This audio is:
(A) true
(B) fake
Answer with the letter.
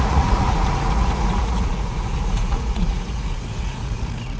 B